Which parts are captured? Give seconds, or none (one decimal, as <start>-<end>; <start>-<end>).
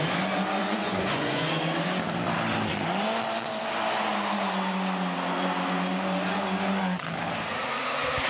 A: 0.0-0.6; 1.8-8.3